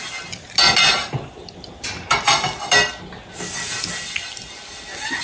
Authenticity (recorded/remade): recorded